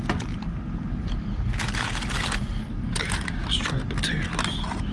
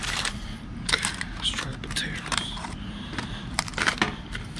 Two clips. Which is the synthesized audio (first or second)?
second